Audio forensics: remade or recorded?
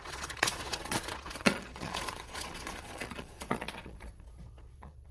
remade